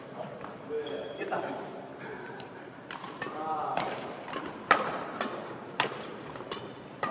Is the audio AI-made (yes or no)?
yes